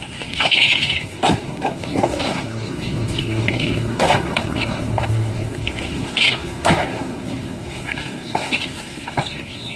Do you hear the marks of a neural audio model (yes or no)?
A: yes